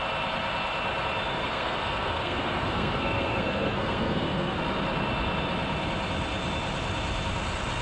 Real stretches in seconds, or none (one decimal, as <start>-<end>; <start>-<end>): 0.0-1.4; 4.6-7.8